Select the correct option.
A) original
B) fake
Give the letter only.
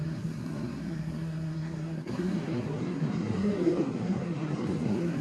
B